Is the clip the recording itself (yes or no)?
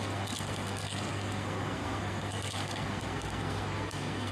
no